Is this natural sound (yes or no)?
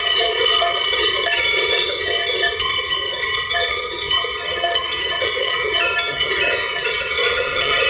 no